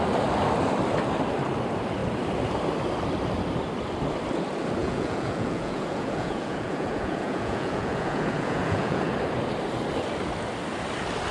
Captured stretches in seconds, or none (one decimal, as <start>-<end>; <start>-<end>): 0.0-4.8; 9.1-11.3